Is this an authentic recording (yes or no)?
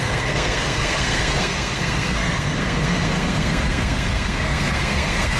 no